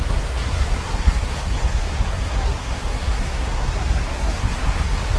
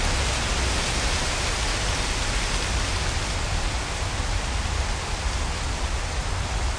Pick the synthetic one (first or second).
first